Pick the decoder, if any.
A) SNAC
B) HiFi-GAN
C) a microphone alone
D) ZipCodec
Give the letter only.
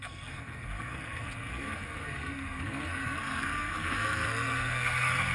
A